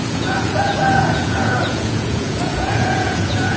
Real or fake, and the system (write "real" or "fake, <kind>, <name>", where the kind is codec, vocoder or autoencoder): fake, vocoder, Vocos